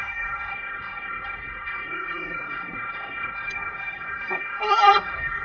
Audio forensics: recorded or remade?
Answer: remade